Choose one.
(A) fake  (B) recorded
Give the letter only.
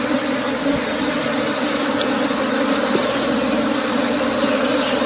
B